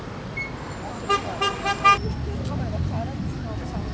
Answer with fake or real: real